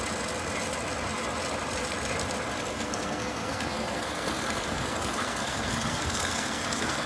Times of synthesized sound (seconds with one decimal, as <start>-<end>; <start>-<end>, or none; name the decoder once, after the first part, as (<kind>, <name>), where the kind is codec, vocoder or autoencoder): 2.7-7.1 (codec, SNAC)

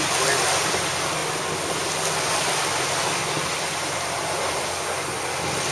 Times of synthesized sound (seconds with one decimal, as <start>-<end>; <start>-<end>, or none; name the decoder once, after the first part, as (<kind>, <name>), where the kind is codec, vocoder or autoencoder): none

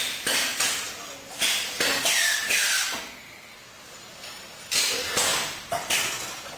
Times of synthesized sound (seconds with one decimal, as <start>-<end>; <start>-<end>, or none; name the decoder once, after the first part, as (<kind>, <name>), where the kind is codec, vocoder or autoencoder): 5.3-6.0 (vocoder, BigVGAN v2)

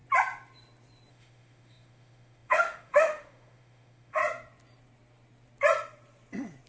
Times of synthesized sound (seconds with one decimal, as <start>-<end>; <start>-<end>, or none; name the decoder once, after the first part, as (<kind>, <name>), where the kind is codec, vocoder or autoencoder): 1.1-4.2 (autoencoder, DAC-VAE)

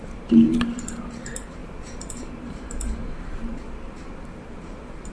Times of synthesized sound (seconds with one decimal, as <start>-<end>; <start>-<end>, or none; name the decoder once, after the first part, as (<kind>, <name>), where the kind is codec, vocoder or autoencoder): 0.0-3.5 (vocoder, BigVGAN v2); 4.3-5.1

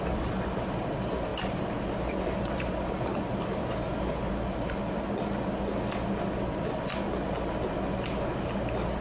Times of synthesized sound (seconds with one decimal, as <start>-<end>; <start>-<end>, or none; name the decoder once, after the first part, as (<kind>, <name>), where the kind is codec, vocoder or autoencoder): 1.3-4.3 (vocoder, BigVGAN v2)

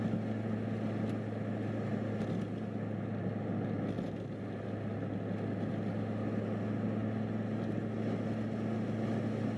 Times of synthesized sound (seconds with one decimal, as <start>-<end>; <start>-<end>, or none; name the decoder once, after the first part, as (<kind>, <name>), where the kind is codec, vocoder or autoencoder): none

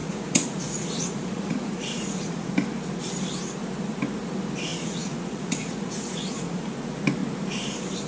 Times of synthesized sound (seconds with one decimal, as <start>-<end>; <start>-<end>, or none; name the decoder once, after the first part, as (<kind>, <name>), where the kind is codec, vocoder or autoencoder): 0.0-2.5 (vocoder, Vocos); 4.7-6.6